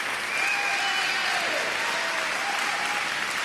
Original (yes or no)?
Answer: yes